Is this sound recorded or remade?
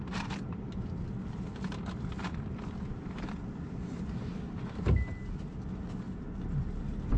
recorded